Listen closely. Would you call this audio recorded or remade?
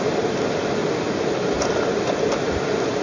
recorded